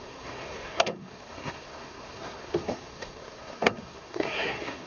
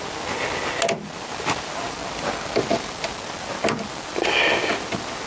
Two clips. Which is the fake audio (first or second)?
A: first